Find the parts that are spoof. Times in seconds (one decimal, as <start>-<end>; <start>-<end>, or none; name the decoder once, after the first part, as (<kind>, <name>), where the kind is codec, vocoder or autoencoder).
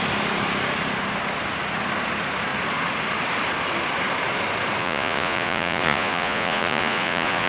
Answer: 4.8-7.5 (vocoder, Vocos)